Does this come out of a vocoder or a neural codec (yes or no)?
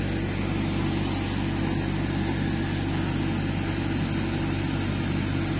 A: no